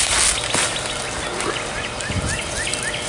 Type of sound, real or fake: real